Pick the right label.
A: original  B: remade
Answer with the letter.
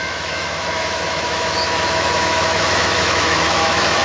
B